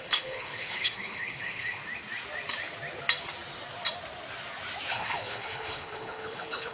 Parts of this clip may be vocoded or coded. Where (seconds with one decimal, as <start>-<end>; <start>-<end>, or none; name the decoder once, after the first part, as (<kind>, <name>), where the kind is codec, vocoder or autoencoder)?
0.0-1.8 (codec, HILCodec); 4.9-6.7